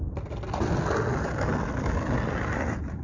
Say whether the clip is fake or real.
real